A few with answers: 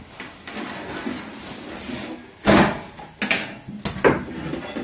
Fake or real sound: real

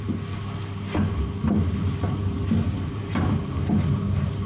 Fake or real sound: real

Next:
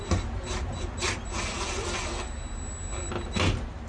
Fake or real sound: real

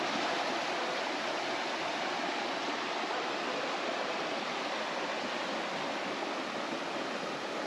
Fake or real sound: real